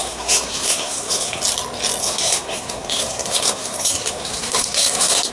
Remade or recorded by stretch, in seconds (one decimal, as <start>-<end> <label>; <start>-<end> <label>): 0.0-1.4 remade; 1.4-2.0 recorded; 2.0-5.3 remade